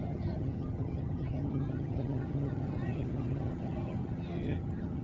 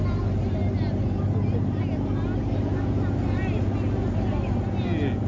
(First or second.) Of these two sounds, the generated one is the first